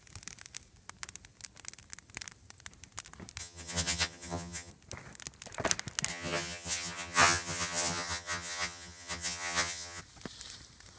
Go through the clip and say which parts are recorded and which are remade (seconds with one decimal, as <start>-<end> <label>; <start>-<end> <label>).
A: 0.0-3.4 recorded; 3.4-4.7 remade; 4.7-6.1 recorded; 6.1-10.0 remade; 10.0-11.0 recorded